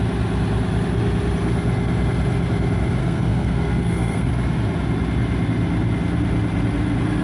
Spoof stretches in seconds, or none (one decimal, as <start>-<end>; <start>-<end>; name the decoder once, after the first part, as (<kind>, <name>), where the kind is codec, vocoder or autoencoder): 3.0-4.3 (codec, SNAC)